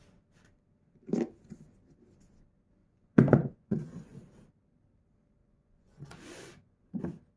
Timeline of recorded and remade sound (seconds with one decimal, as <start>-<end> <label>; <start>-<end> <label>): 0.0-2.8 recorded; 2.8-4.2 remade; 4.2-5.4 recorded; 5.4-7.0 remade; 7.0-7.4 recorded